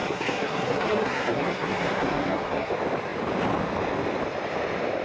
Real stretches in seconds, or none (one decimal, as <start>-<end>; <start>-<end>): 2.7-5.0